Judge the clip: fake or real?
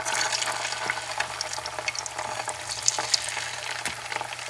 real